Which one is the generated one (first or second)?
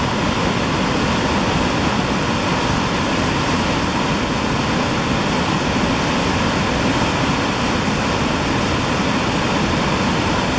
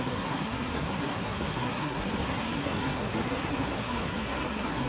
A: second